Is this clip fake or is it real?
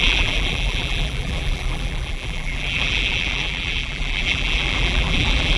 fake